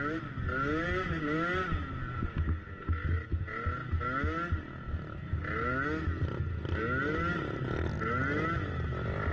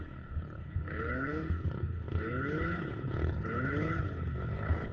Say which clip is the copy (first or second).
second